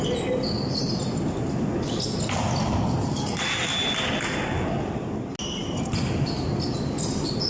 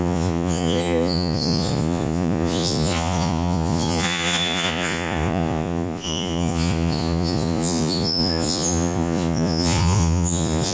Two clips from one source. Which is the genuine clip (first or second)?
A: first